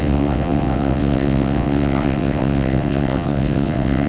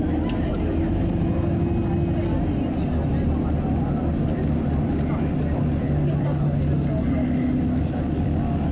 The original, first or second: second